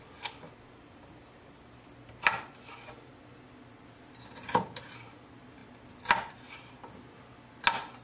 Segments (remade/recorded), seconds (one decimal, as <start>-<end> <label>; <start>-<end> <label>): 0.0-8.0 recorded